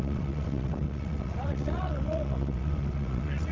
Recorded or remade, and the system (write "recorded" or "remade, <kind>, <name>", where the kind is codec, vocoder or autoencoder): remade, vocoder, WaveNeXt